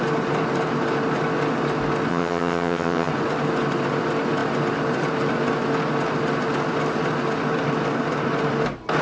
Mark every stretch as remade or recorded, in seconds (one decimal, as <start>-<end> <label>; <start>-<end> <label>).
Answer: 0.0-2.1 recorded; 2.1-3.1 remade; 3.1-9.0 recorded